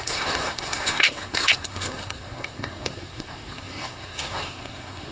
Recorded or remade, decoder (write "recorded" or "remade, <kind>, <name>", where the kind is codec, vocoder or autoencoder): remade, codec, SNAC